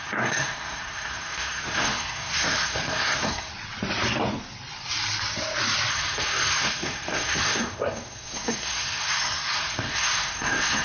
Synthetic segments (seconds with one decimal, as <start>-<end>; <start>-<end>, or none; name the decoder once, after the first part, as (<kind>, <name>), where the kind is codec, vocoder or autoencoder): 0.0-3.5 (codec, SNAC); 5.9-10.8